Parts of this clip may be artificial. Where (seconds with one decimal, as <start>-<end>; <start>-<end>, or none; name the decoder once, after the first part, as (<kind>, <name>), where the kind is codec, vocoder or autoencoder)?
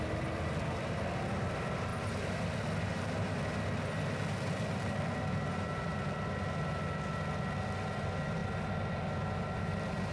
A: none